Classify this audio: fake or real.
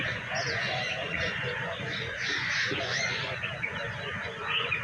fake